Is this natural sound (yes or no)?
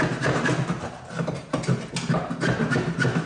yes